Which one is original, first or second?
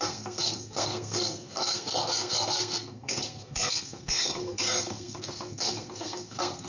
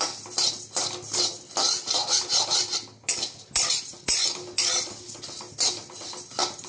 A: second